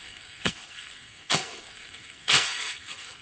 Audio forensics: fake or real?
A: fake